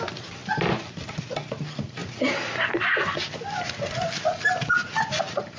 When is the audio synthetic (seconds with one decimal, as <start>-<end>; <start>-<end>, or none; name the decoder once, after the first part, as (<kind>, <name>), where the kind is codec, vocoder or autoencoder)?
2.0-4.7 (vocoder, BigVGAN v2)